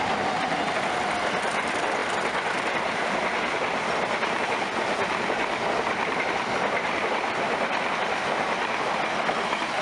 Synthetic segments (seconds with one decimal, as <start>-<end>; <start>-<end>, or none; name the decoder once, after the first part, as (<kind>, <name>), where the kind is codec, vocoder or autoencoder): none